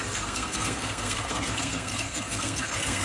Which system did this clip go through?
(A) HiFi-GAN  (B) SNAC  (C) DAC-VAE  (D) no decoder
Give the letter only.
B